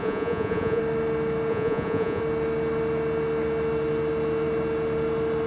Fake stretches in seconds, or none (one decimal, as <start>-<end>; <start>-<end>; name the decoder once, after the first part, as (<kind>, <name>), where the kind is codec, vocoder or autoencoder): 0.0-0.8 (vocoder, Vocos); 1.5-2.2